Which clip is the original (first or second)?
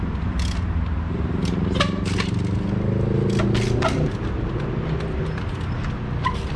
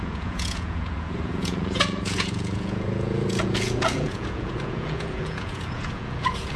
first